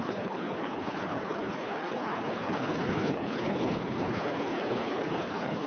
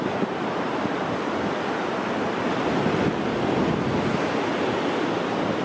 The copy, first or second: first